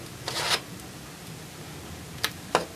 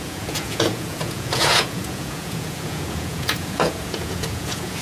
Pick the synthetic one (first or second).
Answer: second